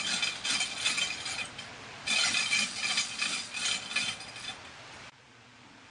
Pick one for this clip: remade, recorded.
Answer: recorded